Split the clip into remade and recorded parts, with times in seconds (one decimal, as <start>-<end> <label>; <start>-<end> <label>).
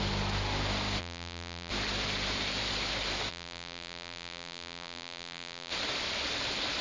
0.0-1.0 recorded; 1.0-1.7 remade; 1.7-3.3 recorded; 3.3-5.7 remade; 5.7-6.8 recorded